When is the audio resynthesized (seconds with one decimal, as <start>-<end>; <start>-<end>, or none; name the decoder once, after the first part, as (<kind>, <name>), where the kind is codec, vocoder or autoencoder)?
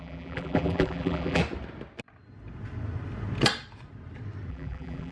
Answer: 0.0-1.4 (vocoder, BigVGAN v2); 4.5-5.1